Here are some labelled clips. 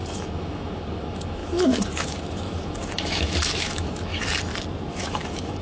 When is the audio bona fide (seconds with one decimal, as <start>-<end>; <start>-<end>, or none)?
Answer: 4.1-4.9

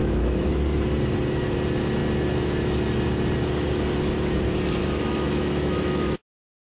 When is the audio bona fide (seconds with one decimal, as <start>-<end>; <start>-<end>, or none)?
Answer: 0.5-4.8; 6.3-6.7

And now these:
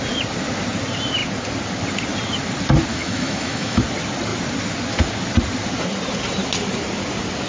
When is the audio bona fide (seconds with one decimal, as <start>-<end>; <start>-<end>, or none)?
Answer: 0.0-2.9; 3.8-7.5

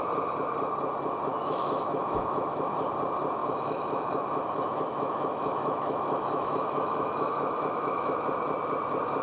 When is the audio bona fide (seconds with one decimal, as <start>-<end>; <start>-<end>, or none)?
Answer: 0.0-1.3; 2.8-3.4; 8.2-9.2

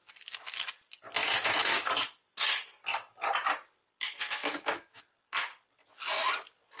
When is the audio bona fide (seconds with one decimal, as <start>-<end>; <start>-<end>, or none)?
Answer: 0.0-1.2; 1.9-4.4; 5.0-6.8

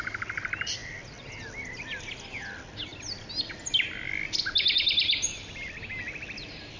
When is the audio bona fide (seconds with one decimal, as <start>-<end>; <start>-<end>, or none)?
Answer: 0.0-6.8

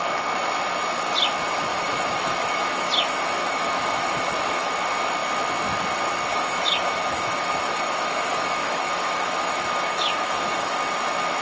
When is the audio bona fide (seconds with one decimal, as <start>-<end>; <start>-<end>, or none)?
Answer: 0.0-1.7; 2.9-3.4; 4.7-6.3; 10.8-11.4

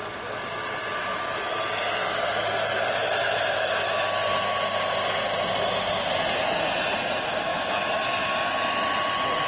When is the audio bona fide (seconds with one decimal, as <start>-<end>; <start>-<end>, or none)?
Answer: 0.0-3.0; 4.0-7.5; 8.3-9.5